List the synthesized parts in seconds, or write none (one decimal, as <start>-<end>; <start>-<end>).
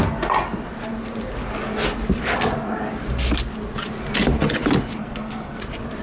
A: 5.0-5.6